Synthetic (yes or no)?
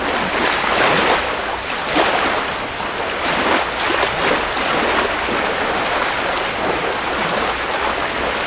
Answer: no